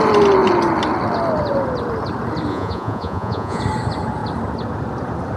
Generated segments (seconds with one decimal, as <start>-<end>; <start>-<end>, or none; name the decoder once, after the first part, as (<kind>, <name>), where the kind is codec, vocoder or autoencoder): 2.5-3.6 (vocoder, Vocos)